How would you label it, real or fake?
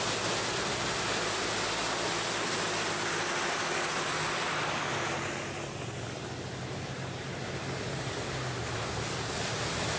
real